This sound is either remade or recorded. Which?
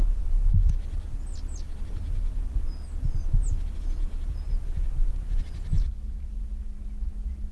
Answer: recorded